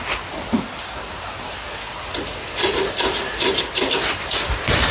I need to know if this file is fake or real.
real